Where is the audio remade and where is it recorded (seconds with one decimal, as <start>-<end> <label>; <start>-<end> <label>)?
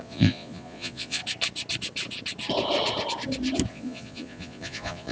0.0-1.2 remade; 1.2-3.7 recorded; 3.7-5.1 remade